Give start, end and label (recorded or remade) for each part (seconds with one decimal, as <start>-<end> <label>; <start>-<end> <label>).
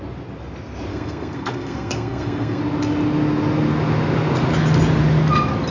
0.0-0.9 recorded; 0.9-2.6 remade; 2.6-5.7 recorded